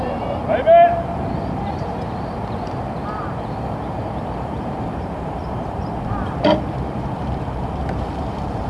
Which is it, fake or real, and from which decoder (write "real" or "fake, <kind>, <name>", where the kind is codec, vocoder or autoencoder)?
fake, vocoder, BigVGAN v2